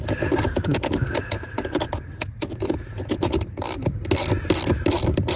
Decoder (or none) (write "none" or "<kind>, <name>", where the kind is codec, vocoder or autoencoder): none